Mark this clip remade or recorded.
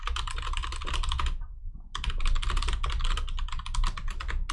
recorded